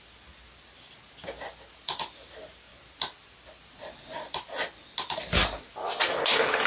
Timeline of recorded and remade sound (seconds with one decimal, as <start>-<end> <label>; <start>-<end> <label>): 0.0-6.7 recorded